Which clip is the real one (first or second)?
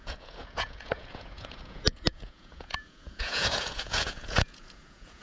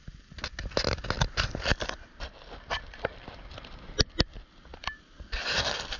second